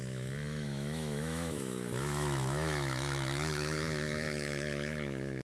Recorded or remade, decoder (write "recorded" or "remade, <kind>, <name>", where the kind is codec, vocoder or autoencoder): remade, autoencoder, DAC-VAE